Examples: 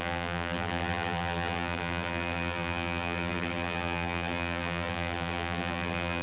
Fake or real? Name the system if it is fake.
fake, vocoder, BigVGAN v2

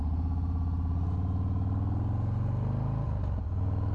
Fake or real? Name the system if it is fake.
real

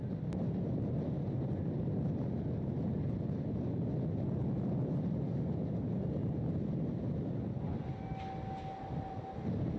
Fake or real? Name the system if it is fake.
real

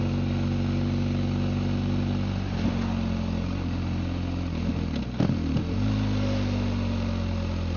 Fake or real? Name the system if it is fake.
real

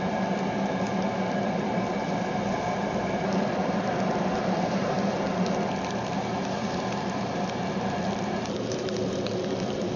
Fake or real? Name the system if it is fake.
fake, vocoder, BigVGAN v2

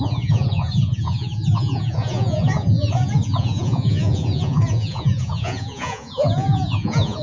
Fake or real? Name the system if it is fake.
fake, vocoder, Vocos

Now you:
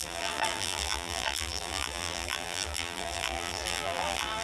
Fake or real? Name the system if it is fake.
fake, vocoder, BigVGAN v2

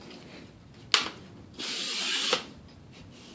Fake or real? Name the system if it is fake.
real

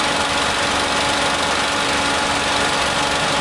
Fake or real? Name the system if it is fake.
real